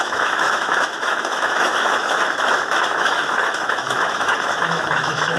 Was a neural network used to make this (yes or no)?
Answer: yes